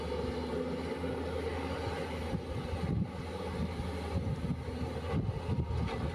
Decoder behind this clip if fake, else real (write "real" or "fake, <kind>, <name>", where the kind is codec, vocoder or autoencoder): real